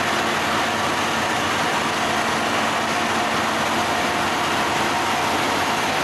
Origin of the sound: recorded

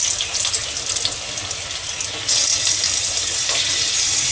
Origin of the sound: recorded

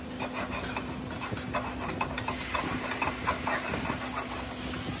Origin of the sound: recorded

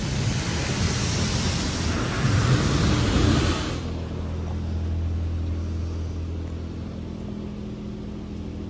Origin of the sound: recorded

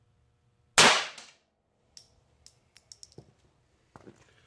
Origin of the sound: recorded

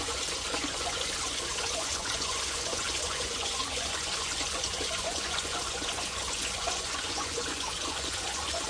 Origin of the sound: remade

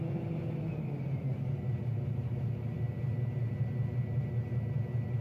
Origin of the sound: recorded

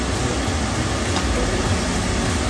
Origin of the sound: recorded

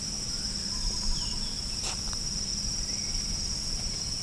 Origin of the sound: recorded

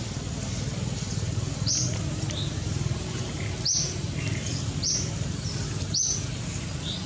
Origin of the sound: recorded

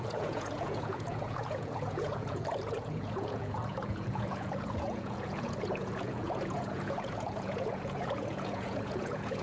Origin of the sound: remade